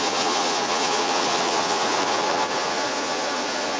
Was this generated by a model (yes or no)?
yes